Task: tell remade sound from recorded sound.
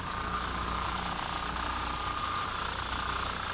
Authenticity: recorded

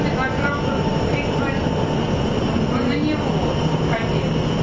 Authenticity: recorded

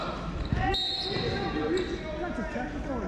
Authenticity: recorded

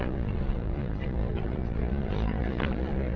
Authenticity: remade